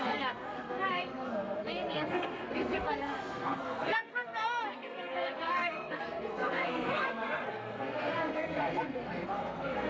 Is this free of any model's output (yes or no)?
no